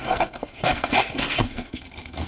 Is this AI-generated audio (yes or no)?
yes